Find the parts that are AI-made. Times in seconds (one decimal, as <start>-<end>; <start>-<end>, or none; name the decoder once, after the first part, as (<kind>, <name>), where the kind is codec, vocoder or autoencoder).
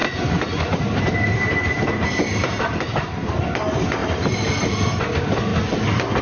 0.0-1.0 (vocoder, BigVGAN v2); 2.3-3.4; 4.0-5.0